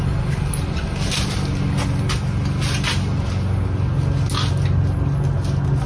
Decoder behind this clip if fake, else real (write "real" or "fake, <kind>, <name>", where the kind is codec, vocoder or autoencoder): real